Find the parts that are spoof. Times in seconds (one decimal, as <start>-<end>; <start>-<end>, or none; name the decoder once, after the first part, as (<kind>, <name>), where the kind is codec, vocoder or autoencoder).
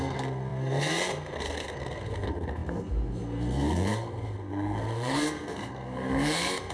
0.0-6.7 (codec, SNAC)